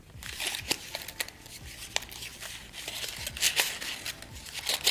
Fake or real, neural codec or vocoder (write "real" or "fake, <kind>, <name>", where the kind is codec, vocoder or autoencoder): real